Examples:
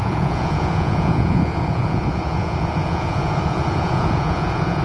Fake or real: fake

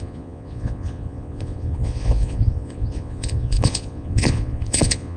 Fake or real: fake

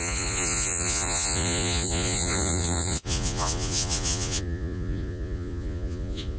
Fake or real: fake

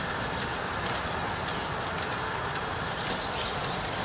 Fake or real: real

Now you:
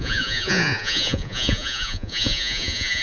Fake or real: fake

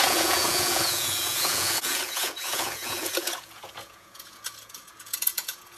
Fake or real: fake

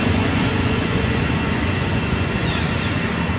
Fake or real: fake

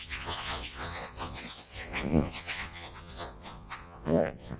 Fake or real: fake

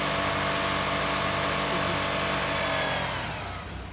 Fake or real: real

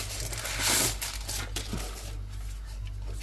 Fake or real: real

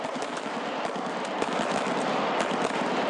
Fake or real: real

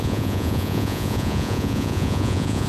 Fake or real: fake